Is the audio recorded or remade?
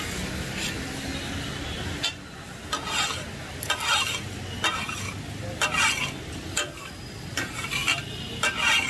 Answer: recorded